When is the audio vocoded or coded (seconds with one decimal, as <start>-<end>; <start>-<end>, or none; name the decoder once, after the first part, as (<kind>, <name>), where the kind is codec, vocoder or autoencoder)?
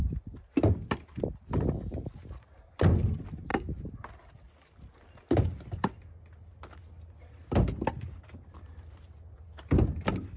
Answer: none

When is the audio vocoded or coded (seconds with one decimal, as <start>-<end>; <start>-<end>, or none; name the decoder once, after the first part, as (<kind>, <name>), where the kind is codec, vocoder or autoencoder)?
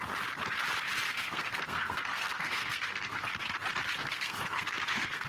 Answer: 1.1-3.3 (codec, SNAC); 4.0-5.3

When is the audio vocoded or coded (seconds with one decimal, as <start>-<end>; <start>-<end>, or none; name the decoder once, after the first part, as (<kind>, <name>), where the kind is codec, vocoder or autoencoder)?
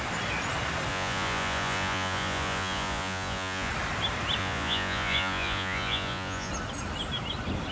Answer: 0.9-3.7 (vocoder, Vocos); 4.4-6.5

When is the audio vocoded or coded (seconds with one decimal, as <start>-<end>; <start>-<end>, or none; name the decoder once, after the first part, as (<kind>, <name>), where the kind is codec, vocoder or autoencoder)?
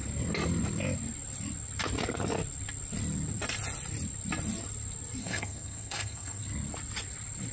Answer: 5.2-6.4 (codec, SNAC)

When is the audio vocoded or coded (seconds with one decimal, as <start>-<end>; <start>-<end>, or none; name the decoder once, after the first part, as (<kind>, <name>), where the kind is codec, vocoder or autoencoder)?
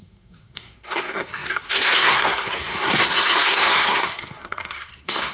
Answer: 0.0-5.3 (codec, SNAC)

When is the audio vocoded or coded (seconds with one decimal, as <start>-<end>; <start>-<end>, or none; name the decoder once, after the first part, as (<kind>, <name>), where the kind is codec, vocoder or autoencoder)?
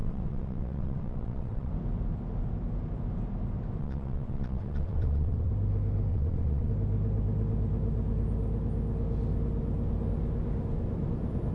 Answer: 0.0-1.7 (vocoder, WaveNeXt); 3.8-5.5; 6.1-6.7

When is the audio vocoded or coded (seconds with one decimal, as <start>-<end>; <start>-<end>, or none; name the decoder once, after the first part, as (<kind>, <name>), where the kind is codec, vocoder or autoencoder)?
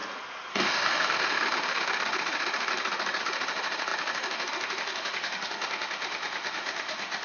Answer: 0.5-2.7 (autoencoder, DAC-VAE); 3.2-7.2